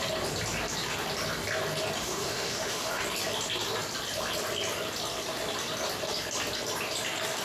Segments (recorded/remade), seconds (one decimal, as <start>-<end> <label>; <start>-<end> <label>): 0.0-2.0 recorded; 2.0-3.0 remade; 3.0-7.4 recorded